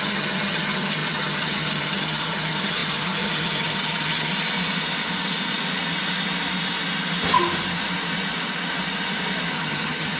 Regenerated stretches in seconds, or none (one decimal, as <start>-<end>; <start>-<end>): 0.0-4.3; 9.5-10.2